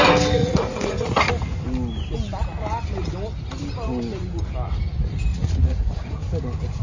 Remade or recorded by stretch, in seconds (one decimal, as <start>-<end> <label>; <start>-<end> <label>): 0.0-0.4 recorded; 0.4-1.3 remade; 1.3-5.3 recorded; 5.3-6.2 remade; 6.2-6.8 recorded